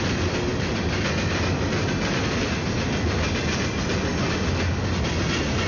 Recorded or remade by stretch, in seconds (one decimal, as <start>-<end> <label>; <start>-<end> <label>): 0.0-5.7 recorded